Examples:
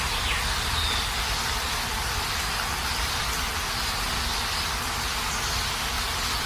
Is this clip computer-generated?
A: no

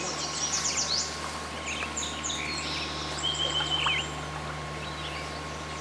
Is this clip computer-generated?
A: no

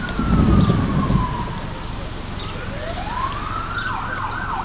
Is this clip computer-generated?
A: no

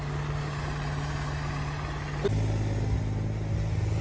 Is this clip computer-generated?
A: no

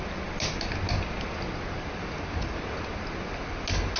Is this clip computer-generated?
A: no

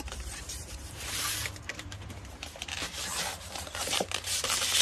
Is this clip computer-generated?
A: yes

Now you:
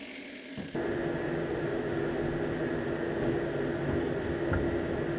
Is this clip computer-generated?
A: no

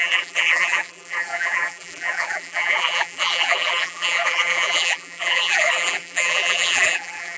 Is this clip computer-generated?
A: yes